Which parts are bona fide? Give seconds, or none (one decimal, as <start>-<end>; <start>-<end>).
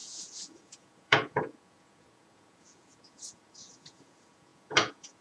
none